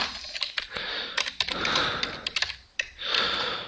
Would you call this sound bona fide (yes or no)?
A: yes